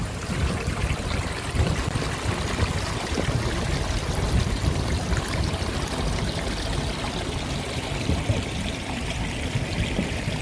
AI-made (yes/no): no